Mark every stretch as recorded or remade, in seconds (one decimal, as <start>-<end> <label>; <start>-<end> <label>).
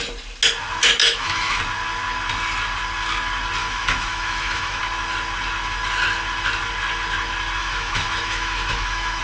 0.0-1.0 recorded; 1.0-1.6 remade; 1.6-3.6 recorded; 3.6-4.8 remade; 4.8-7.6 recorded; 7.6-9.2 remade